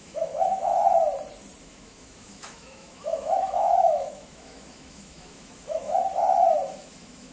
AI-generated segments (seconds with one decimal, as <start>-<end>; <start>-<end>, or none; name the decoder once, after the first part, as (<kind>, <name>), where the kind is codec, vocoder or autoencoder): 0.0-0.7 (autoencoder, DAC-VAE); 1.6-6.0; 6.7-7.3